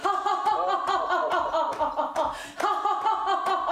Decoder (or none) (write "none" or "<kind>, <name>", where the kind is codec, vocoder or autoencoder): none